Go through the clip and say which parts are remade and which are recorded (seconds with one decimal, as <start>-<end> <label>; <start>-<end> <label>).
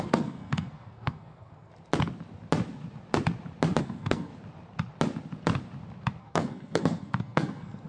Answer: 0.0-1.7 remade; 1.7-3.8 recorded; 3.8-4.3 remade; 4.3-6.2 recorded; 6.2-7.9 remade